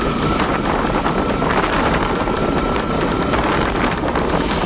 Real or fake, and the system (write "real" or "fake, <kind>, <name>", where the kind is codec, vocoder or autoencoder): real